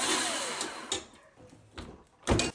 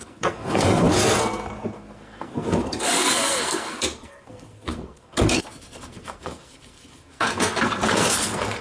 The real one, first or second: first